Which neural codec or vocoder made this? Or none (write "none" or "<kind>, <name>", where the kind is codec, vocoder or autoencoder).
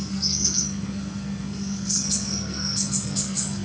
codec, SNAC